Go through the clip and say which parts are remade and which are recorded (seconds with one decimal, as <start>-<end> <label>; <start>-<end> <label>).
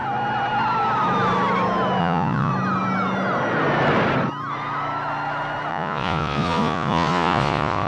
0.0-2.0 recorded; 2.0-2.5 remade; 2.5-5.7 recorded; 5.7-7.9 remade